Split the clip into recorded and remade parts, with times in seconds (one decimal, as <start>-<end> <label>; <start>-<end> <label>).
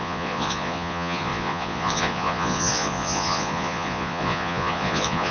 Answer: 0.0-5.3 remade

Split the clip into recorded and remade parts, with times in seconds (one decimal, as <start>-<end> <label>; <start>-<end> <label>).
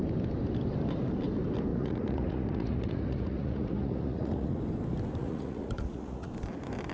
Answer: 0.0-1.7 recorded; 1.7-4.6 remade; 4.6-5.2 recorded; 5.2-6.3 remade; 6.3-6.9 recorded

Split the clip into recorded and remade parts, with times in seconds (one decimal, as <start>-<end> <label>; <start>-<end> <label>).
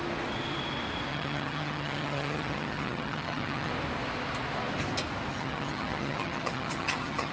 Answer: 0.0-1.1 recorded; 1.1-3.7 remade; 3.7-5.3 recorded; 5.3-7.3 remade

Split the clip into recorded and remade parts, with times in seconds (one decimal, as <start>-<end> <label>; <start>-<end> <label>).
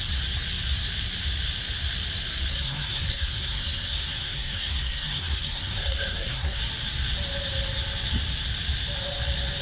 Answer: 0.0-2.5 recorded; 2.5-6.6 remade; 6.6-9.6 recorded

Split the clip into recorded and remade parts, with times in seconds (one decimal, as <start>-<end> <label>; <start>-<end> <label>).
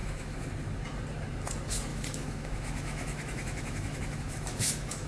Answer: 0.0-0.5 remade; 0.5-1.9 recorded; 1.9-5.1 remade